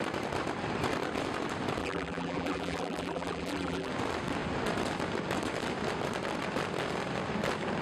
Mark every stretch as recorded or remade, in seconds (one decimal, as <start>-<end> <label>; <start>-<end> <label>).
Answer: 0.0-1.8 recorded; 1.8-3.9 remade; 3.9-7.8 recorded